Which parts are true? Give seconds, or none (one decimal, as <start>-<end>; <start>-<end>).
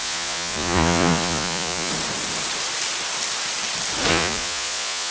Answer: 1.9-4.1